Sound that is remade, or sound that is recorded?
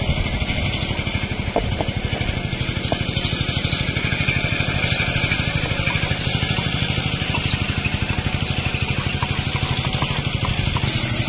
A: recorded